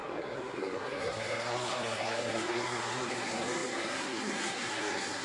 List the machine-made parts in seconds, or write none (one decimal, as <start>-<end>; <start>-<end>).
0.0-5.2